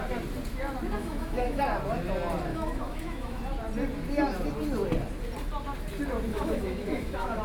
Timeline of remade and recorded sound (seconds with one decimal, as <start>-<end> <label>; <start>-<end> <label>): 0.0-1.0 recorded; 1.0-1.6 remade; 1.6-2.5 recorded; 2.5-3.4 remade; 3.4-6.3 recorded; 6.3-7.4 remade